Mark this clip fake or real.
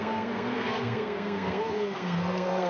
fake